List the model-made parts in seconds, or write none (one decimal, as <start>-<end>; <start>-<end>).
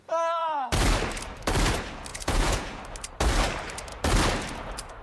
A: 2.1-2.8